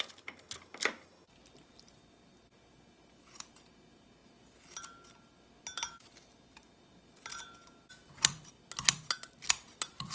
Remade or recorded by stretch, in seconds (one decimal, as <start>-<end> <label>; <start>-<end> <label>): 0.0-10.1 recorded